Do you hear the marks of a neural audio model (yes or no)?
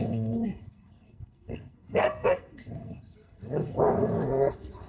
yes